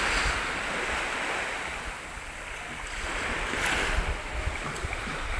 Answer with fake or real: real